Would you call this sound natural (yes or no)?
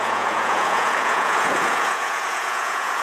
no